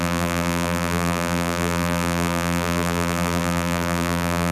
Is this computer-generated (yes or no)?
yes